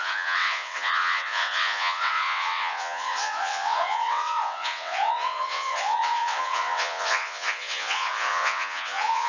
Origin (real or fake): fake